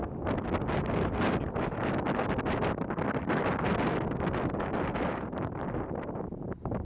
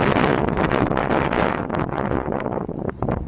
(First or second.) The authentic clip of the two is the first